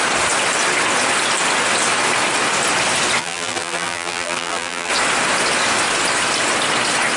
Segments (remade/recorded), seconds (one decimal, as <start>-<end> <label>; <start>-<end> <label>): 0.0-3.2 recorded; 3.2-4.9 remade; 4.9-7.2 recorded